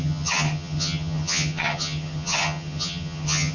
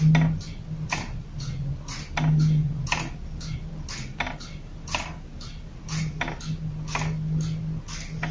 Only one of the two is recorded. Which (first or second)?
second